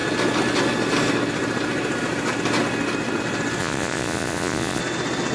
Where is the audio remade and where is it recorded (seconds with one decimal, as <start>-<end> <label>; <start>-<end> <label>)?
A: 0.0-3.6 recorded; 3.6-4.8 remade; 4.8-5.3 recorded